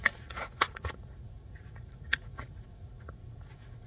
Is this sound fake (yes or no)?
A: yes